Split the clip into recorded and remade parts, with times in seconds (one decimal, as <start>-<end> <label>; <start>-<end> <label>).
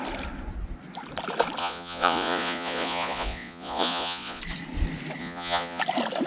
0.0-1.6 recorded; 1.6-4.4 remade; 4.4-5.2 recorded; 5.2-5.8 remade; 5.8-6.3 recorded